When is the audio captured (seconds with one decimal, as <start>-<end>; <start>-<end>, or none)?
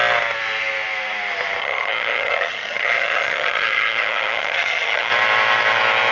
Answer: 0.0-1.6; 5.1-6.1